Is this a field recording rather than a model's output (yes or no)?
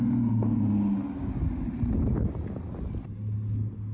yes